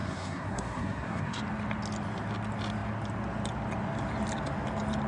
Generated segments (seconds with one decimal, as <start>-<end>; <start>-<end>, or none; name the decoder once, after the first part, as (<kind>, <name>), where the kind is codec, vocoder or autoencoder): 0.0-1.4 (codec, SNAC)